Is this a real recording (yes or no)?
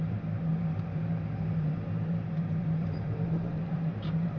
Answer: no